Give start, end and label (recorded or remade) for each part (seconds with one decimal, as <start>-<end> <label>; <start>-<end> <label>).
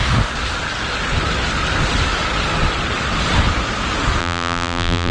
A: 0.0-4.2 recorded; 4.2-5.1 remade